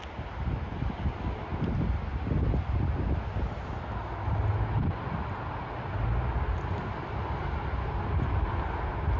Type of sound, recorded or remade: recorded